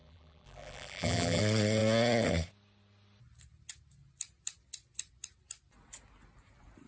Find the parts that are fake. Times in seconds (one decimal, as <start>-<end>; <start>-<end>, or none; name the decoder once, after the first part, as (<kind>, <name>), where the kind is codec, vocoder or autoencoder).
0.0-1.4 (vocoder, BigVGAN v2)